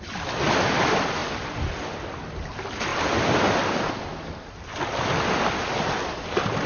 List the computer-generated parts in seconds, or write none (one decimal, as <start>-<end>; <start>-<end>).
none